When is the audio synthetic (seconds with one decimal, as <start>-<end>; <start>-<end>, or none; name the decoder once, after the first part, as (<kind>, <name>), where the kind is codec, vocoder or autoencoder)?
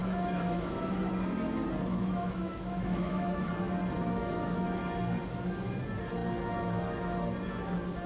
0.0-1.1 (autoencoder, DAC-VAE); 1.9-3.5; 4.2-4.8